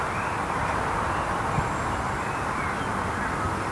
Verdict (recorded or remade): recorded